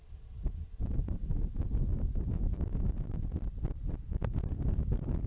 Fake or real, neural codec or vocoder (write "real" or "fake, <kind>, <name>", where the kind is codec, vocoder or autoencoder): real